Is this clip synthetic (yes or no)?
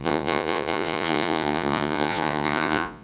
yes